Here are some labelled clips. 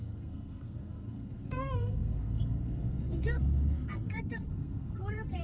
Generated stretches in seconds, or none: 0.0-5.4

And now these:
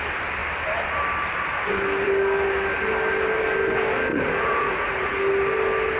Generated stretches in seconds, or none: 4.1-5.1

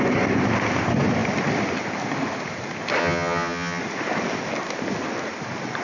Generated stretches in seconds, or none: 3.0-3.8

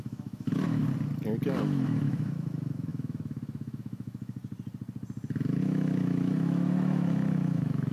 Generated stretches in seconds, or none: 0.0-0.8; 1.6-4.4; 5.6-7.9

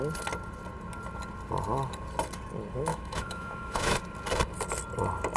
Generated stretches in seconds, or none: 2.9-4.0

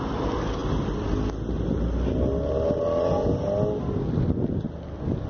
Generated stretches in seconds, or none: none